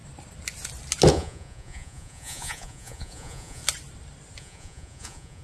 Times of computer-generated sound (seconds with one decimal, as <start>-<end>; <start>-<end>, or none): 1.1-3.6; 4.4-5.4